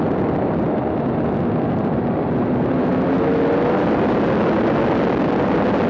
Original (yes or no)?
yes